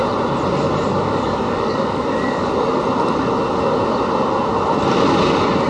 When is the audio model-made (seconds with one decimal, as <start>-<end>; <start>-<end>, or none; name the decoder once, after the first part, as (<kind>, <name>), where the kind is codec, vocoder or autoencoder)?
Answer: 0.9-2.5 (codec, DAC)